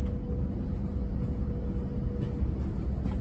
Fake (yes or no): no